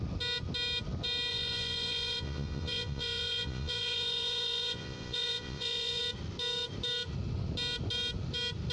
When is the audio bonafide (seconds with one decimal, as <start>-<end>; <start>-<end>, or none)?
0.0-1.3; 6.0-8.7